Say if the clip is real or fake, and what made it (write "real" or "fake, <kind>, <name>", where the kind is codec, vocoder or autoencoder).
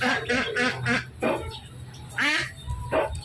real